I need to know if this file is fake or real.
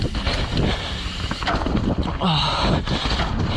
real